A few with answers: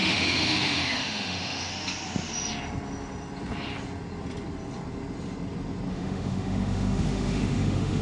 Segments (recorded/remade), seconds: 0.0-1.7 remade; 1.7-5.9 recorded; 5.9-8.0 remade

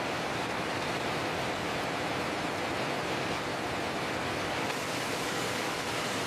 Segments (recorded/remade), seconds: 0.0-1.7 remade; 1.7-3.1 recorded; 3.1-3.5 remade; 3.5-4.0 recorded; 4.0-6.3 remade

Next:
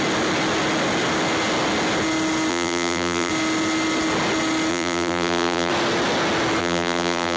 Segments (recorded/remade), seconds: 0.0-2.5 recorded; 2.5-3.3 remade; 3.3-4.7 recorded; 4.7-5.7 remade; 5.7-6.6 recorded; 6.6-7.4 remade